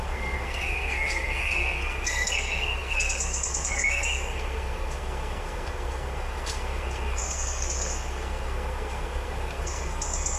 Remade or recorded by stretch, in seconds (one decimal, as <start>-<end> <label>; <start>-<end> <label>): 0.0-10.4 remade